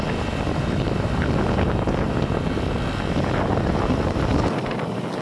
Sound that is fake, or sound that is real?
real